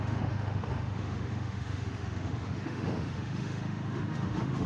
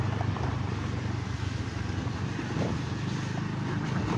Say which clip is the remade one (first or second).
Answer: first